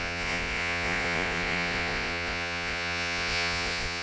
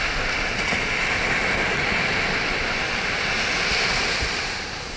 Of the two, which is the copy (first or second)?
first